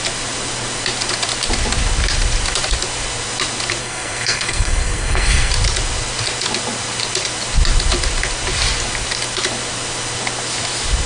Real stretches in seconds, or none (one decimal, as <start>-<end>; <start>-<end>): 0.0-3.8; 5.5-11.1